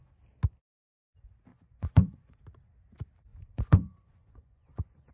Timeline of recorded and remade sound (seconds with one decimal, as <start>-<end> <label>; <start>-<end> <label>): 0.0-1.5 recorded; 1.5-2.4 remade; 2.4-3.3 recorded; 3.3-5.1 remade